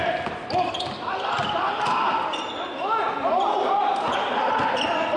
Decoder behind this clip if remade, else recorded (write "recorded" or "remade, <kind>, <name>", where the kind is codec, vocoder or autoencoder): recorded